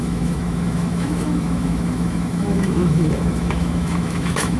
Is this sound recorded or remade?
remade